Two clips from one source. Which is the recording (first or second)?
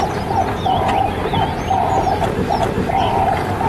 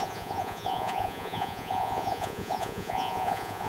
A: first